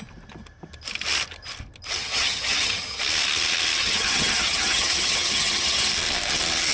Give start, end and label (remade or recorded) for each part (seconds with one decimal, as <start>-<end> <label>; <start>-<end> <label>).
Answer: 0.0-2.0 recorded; 2.0-3.0 remade; 3.0-3.8 recorded; 3.8-5.9 remade; 5.9-6.7 recorded